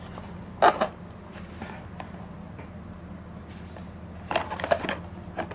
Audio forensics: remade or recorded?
recorded